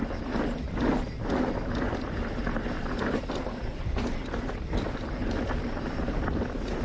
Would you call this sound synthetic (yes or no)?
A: no